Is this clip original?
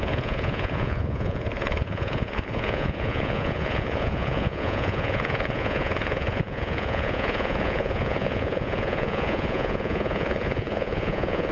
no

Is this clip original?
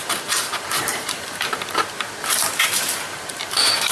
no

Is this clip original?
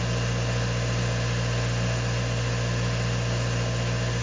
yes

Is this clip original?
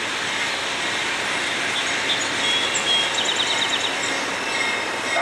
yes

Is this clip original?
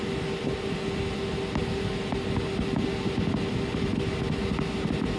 yes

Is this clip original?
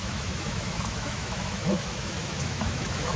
no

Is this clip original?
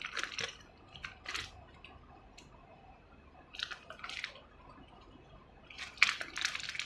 yes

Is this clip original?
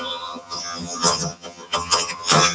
no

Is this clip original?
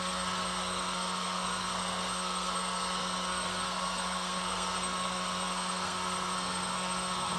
no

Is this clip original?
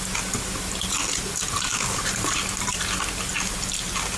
yes